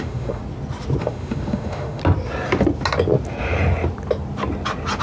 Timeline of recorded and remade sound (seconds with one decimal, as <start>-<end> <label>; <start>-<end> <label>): 0.0-0.4 remade; 0.4-1.0 recorded; 1.0-2.0 remade; 2.0-5.0 recorded